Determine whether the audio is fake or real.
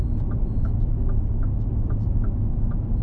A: real